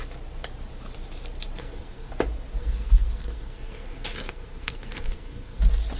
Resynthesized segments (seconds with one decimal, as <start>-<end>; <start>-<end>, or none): 1.6-2.1; 2.6-5.6

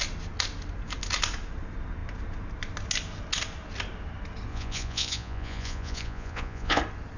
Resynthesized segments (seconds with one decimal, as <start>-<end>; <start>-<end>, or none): 4.5-6.8

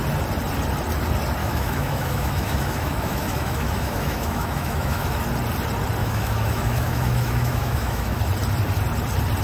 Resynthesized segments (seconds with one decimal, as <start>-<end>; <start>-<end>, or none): 1.4-5.2; 6.0-8.2